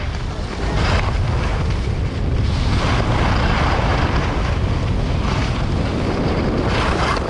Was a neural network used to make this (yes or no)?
no